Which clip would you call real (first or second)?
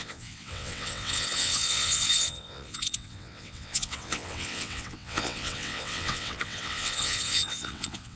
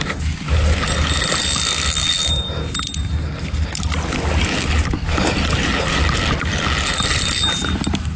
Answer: second